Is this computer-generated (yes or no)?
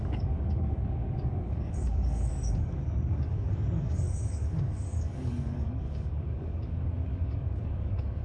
yes